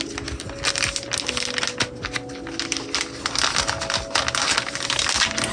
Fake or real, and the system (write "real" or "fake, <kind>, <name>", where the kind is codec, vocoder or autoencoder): real